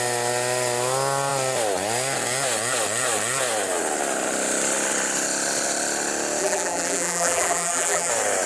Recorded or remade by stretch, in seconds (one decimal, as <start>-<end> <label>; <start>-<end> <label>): 0.0-6.4 recorded; 6.4-8.1 remade; 8.1-8.5 recorded